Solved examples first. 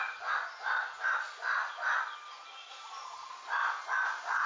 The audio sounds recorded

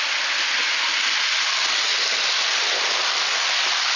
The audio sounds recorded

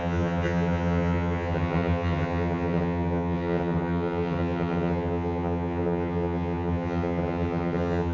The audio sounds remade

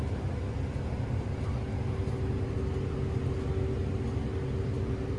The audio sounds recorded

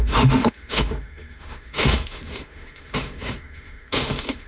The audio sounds remade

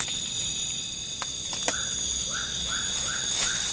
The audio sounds recorded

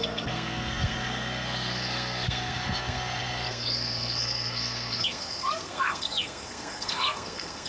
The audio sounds remade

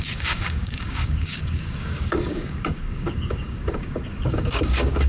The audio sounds remade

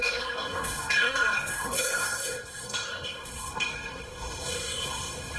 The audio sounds remade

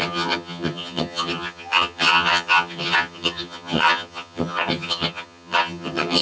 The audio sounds remade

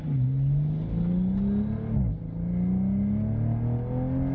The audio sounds recorded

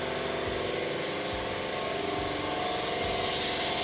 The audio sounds recorded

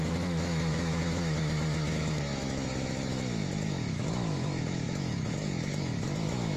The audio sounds remade